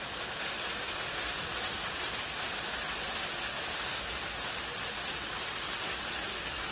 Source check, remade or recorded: recorded